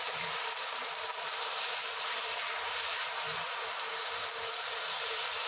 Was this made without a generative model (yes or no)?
no